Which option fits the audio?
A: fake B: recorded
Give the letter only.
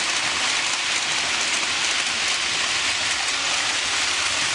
B